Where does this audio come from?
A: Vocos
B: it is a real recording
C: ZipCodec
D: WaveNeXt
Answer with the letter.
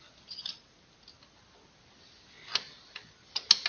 B